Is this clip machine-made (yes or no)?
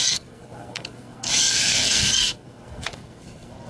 yes